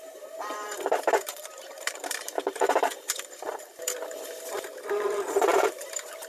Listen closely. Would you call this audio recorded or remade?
remade